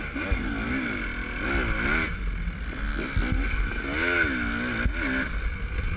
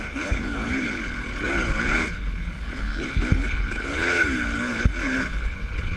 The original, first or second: first